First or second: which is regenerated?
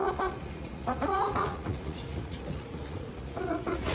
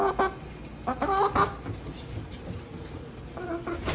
first